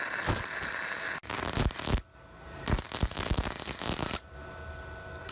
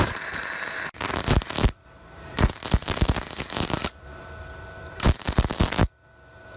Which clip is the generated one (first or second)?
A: second